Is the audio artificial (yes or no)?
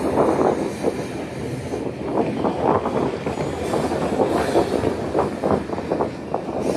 no